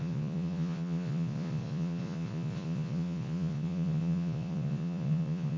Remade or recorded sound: remade